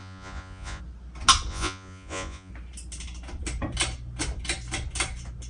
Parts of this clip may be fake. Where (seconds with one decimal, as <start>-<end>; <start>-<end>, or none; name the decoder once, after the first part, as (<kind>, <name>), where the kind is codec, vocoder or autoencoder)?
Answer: 0.0-0.8 (vocoder, Vocos); 1.5-2.5